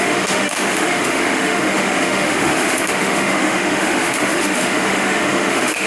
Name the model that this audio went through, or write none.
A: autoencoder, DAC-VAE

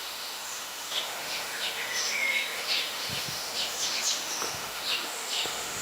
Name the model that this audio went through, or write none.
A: autoencoder, DAC-VAE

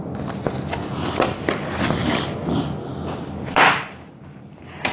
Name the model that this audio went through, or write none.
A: none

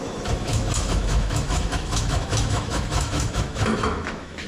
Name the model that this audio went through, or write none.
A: autoencoder, DAC-VAE